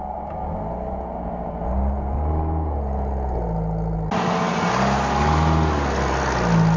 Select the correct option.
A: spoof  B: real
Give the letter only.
B